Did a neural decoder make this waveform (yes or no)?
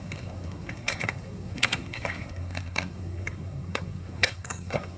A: yes